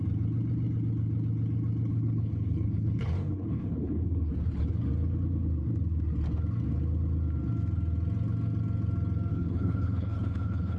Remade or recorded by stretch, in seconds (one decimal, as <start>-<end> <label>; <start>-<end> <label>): 0.0-1.9 recorded; 1.9-4.3 remade; 4.3-9.3 recorded; 9.3-10.8 remade